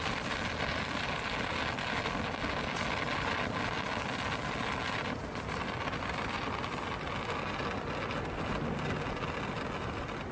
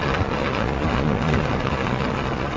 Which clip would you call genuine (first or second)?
first